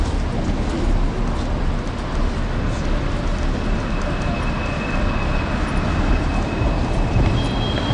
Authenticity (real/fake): real